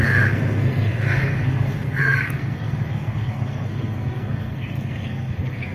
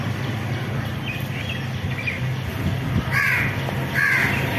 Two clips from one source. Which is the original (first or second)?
second